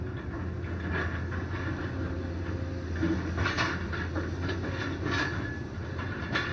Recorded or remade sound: recorded